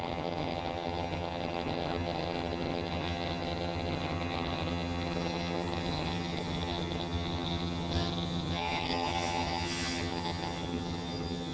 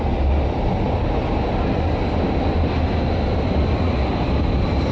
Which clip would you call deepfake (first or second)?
first